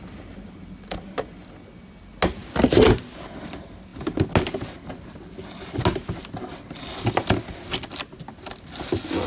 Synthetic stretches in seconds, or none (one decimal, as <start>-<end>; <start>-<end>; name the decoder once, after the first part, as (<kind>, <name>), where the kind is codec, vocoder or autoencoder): none